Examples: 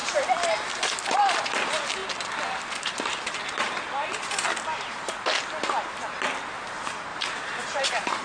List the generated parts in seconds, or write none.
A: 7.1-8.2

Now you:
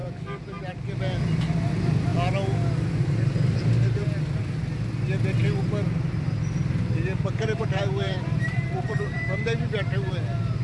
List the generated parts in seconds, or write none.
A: 7.6-10.1

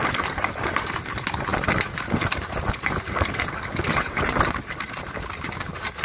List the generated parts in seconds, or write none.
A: 3.9-4.4

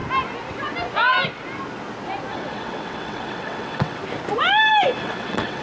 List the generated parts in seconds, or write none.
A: 2.3-4.0; 5.0-5.6

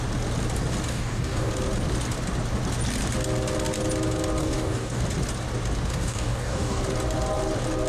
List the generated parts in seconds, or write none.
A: 0.9-1.5; 4.4-5.0; 5.9-6.8

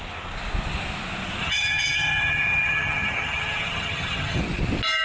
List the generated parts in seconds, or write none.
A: 1.4-4.4

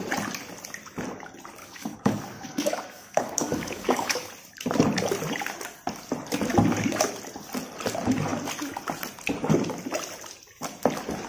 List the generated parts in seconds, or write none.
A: 1.6-4.3